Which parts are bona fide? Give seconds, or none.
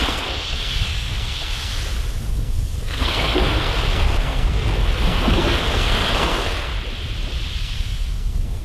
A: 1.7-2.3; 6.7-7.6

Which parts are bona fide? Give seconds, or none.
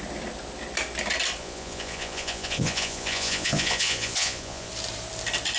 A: 0.0-1.4; 4.7-5.6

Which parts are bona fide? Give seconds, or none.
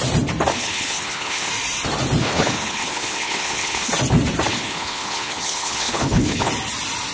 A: 0.0-0.5; 1.5-2.2; 3.9-4.5; 6.5-7.1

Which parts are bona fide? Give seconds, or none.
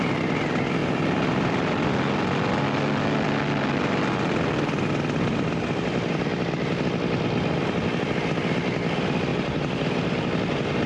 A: 0.0-9.3; 10.2-10.9